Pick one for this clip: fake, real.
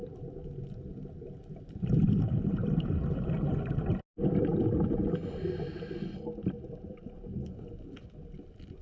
real